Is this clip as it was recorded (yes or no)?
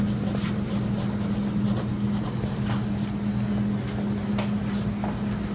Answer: yes